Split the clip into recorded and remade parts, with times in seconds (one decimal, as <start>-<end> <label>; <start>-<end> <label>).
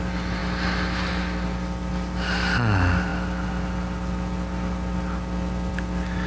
0.0-6.3 recorded